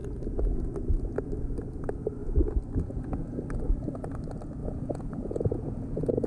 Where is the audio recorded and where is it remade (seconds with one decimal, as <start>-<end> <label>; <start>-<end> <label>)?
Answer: 0.0-2.2 recorded; 2.2-3.4 remade; 3.4-4.6 recorded; 4.6-6.3 remade